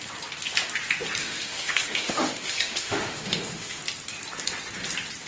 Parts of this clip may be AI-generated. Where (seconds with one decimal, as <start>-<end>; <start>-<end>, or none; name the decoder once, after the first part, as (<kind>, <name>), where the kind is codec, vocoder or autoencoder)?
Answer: 1.2-3.8 (autoencoder, DAC-VAE)